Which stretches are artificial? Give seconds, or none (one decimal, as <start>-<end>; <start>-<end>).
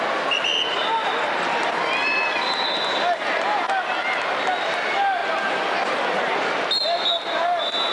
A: none